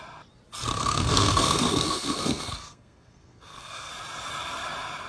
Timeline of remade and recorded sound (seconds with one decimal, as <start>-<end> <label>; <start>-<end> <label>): 0.0-0.8 recorded; 0.8-3.9 remade; 3.9-5.1 recorded